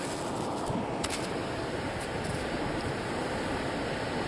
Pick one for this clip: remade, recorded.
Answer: recorded